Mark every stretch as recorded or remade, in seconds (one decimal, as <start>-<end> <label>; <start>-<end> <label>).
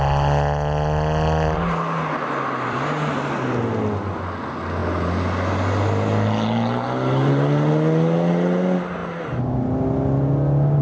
0.0-10.8 recorded